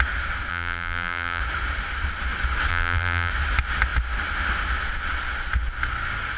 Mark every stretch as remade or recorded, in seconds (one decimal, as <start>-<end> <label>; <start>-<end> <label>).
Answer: 0.0-0.5 recorded; 0.5-1.4 remade; 1.4-2.7 recorded; 2.7-3.3 remade; 3.3-6.4 recorded